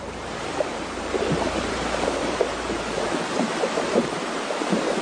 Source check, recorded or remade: remade